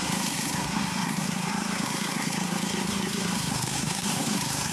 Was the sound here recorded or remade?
remade